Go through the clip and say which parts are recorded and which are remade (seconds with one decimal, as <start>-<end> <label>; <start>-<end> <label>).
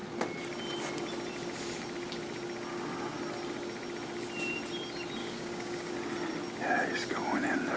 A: 0.0-2.7 recorded; 2.7-3.2 remade; 3.2-5.2 recorded; 5.2-5.9 remade; 5.9-7.8 recorded